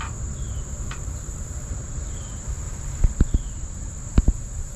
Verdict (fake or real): fake